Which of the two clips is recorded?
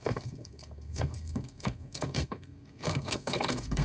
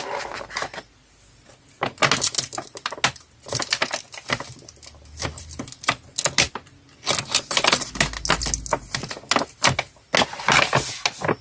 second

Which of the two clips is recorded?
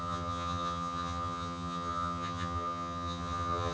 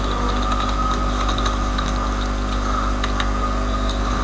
second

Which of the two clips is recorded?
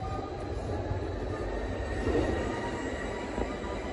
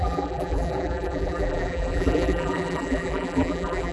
first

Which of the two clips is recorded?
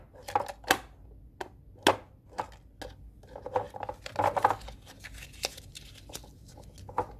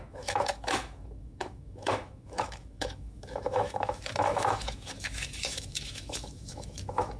first